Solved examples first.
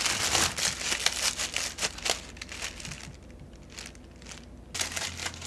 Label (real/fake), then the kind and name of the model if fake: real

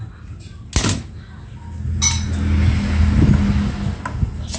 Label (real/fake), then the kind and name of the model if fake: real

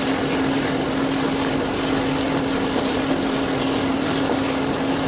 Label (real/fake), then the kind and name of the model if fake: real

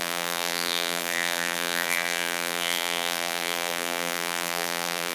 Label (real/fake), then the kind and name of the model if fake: fake, vocoder, BigVGAN v2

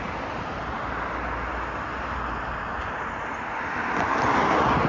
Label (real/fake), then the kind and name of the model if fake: real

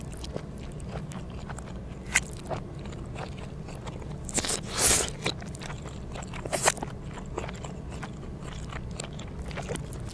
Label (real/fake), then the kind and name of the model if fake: real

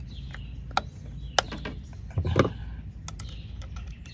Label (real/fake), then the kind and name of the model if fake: real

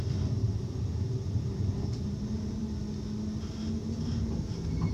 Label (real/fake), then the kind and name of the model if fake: real